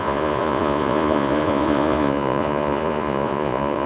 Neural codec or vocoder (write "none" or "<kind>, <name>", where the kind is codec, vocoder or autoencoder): vocoder, Vocos